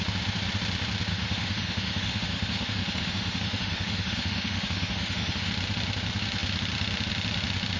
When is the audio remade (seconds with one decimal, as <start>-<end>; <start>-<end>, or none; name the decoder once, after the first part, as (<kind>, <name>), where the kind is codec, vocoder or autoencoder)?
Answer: 1.1-5.5 (autoencoder, DAC-VAE)